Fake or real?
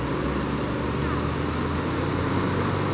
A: real